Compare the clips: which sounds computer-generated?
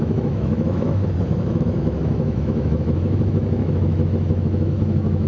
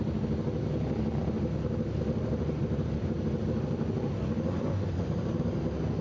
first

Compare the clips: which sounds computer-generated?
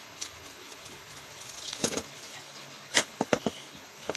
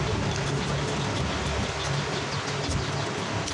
first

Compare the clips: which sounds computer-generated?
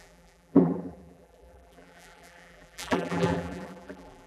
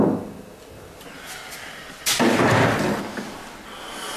first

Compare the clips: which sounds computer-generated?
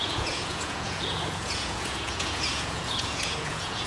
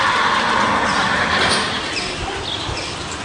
first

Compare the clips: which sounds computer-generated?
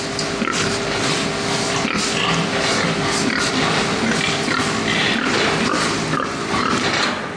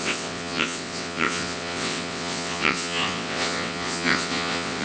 second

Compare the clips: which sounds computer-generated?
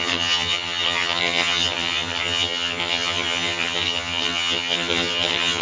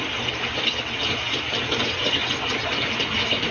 first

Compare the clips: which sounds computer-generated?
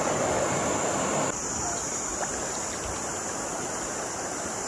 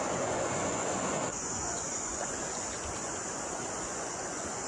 second